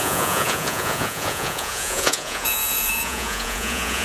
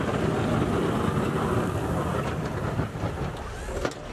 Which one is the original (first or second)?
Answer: second